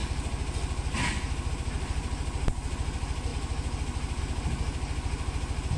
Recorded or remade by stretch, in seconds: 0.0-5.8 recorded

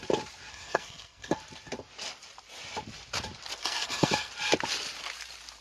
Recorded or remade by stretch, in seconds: 0.0-0.5 recorded; 0.5-1.4 remade; 1.4-3.6 recorded; 3.6-4.3 remade; 4.3-5.6 recorded

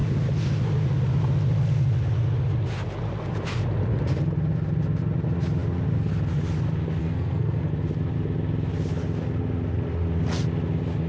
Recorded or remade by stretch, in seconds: 0.0-7.0 recorded; 7.0-7.7 remade; 7.7-11.1 recorded